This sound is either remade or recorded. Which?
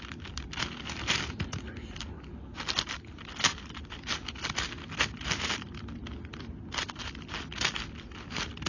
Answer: recorded